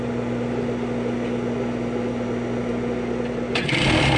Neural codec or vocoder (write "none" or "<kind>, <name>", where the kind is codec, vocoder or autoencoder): none